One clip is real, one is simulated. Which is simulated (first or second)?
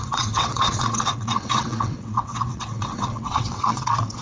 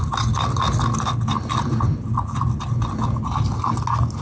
first